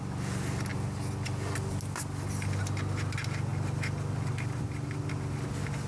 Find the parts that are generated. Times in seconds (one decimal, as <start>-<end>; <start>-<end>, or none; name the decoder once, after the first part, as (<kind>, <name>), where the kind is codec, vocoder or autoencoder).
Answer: none